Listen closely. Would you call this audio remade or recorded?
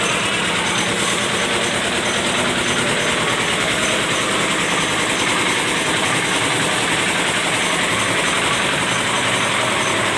recorded